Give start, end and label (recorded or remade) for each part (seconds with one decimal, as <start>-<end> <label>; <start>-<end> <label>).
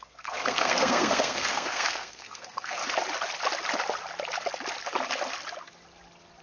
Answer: 0.0-2.8 remade; 2.8-6.4 recorded